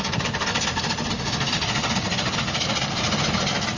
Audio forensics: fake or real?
real